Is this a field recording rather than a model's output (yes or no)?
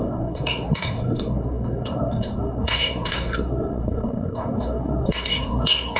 no